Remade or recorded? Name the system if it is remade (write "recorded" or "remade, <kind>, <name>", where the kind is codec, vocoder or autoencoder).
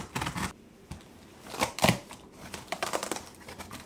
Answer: remade, vocoder, BigVGAN v2